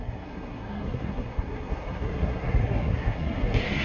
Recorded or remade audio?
remade